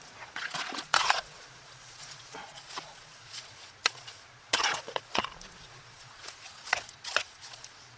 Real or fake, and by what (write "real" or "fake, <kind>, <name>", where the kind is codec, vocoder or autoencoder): fake, vocoder, Vocos